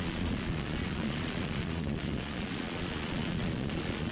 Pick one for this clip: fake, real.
fake